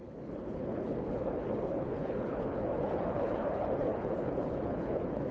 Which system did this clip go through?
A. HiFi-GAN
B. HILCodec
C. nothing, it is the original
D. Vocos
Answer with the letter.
B